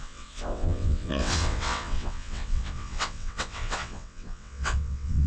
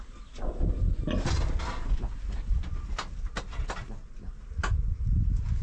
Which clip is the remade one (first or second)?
first